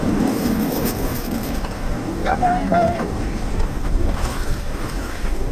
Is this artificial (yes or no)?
yes